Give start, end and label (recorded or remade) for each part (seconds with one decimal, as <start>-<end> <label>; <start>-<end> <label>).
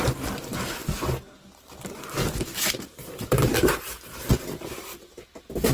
0.0-5.7 recorded